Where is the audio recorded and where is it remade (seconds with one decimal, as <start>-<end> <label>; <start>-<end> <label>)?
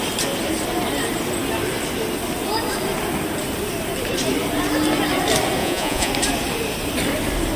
0.0-5.6 recorded; 5.6-6.1 remade; 6.1-7.6 recorded